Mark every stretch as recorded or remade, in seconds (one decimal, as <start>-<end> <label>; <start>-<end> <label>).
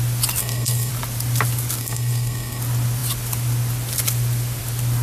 0.0-0.4 recorded; 0.4-0.9 remade; 0.9-1.8 recorded; 1.8-2.6 remade; 2.6-5.0 recorded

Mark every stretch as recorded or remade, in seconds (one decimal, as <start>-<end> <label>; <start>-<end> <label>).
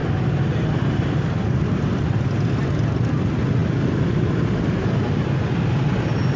0.0-6.4 recorded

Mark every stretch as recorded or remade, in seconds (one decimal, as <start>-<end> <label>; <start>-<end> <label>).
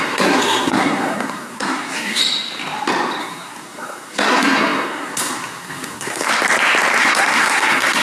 0.0-2.2 remade; 2.2-3.2 recorded; 3.2-6.3 remade; 6.3-7.0 recorded; 7.0-8.0 remade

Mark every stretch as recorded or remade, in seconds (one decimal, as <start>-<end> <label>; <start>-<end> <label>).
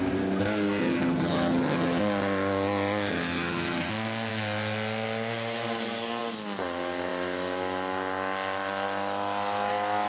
0.0-0.8 recorded; 0.8-2.0 remade; 2.0-3.1 recorded; 3.1-3.9 remade; 3.9-10.1 recorded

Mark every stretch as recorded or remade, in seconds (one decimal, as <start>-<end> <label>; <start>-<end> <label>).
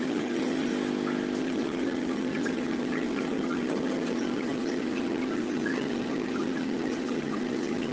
0.0-0.7 remade; 0.7-1.4 recorded; 1.4-7.9 remade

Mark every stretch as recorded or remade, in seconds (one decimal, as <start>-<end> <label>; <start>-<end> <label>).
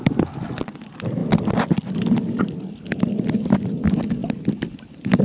0.0-5.2 recorded